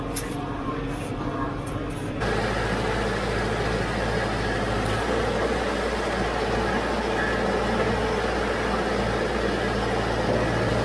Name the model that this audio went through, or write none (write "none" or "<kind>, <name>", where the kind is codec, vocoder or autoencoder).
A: none